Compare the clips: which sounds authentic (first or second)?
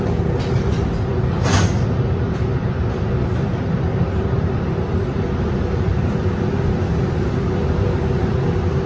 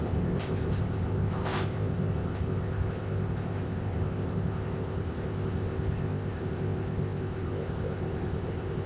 first